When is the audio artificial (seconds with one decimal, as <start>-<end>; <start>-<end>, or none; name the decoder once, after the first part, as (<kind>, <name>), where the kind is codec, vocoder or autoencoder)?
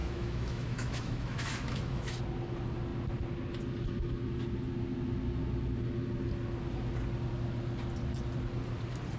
0.0-2.2 (autoencoder, DAC-VAE)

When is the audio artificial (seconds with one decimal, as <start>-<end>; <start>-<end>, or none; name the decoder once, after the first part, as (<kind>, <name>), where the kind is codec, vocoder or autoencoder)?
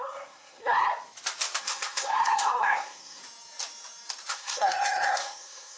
0.0-0.9 (codec, SNAC); 1.6-3.2; 4.3-5.8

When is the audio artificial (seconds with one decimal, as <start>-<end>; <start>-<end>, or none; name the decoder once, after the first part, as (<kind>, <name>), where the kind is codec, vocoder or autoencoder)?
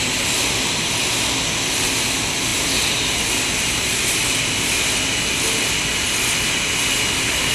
none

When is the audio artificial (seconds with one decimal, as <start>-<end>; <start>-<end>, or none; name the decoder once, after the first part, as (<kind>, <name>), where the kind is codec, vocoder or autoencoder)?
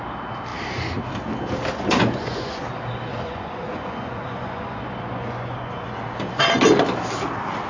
1.7-2.6 (vocoder, Vocos); 3.1-6.0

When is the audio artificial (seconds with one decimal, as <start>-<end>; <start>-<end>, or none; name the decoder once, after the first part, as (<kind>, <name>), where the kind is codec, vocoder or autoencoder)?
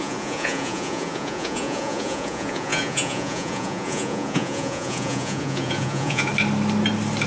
0.0-6.3 (vocoder, Vocos)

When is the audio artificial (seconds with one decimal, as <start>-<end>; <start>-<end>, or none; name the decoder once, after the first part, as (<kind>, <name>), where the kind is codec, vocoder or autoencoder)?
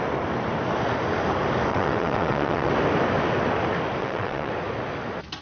1.7-2.7 (vocoder, WaveNeXt); 4.0-4.5